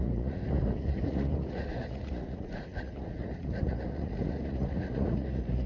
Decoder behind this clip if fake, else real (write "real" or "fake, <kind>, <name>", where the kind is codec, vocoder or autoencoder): fake, vocoder, Vocos